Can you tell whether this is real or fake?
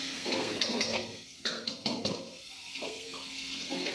fake